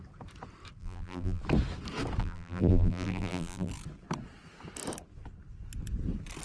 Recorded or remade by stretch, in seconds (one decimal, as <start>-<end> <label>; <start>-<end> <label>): 0.0-0.8 recorded; 0.8-1.4 remade; 1.4-2.2 recorded; 2.2-3.7 remade; 3.7-6.4 recorded